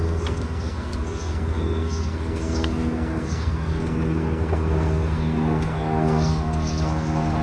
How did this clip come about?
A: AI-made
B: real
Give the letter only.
A